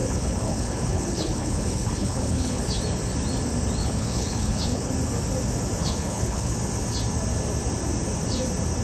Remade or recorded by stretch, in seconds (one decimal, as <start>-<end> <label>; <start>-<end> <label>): 0.0-2.6 remade; 2.6-3.8 recorded; 3.8-4.9 remade; 4.9-5.8 recorded; 5.8-6.5 remade; 6.5-8.8 recorded